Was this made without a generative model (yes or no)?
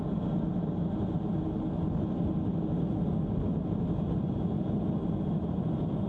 yes